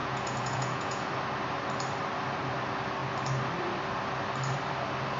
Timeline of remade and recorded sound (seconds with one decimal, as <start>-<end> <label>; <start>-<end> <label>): 0.0-1.1 remade; 1.1-5.2 recorded